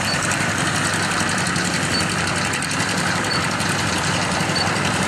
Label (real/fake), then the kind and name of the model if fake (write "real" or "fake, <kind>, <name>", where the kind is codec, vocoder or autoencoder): fake, vocoder, BigVGAN v2